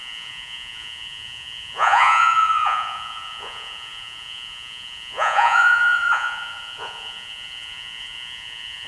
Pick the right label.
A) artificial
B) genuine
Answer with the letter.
A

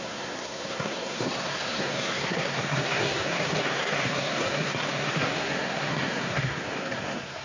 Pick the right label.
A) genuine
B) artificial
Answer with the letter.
B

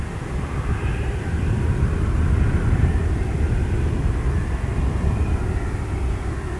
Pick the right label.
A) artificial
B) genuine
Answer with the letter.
B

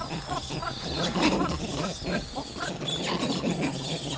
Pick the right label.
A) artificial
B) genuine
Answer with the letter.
B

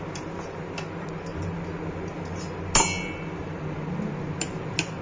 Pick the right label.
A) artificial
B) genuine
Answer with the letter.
B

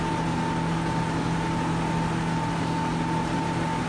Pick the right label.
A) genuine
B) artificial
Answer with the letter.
A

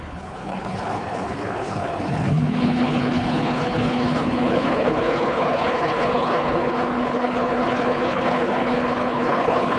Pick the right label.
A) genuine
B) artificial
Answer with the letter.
B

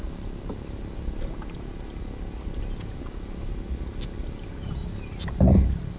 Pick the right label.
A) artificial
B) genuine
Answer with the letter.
B